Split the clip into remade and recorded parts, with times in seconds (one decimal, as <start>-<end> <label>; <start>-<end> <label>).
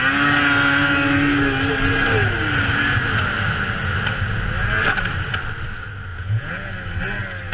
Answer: 0.0-6.1 recorded; 6.1-6.7 remade; 6.7-7.5 recorded